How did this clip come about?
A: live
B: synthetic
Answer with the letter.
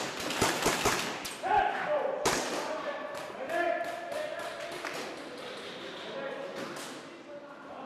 A